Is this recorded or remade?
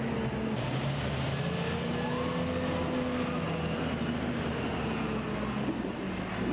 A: recorded